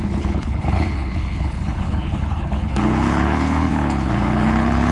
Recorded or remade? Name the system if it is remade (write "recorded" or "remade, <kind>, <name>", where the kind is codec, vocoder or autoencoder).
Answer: remade, codec, HILCodec